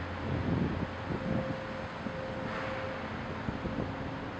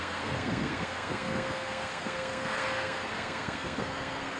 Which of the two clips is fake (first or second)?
second